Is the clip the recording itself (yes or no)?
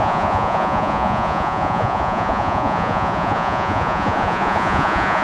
no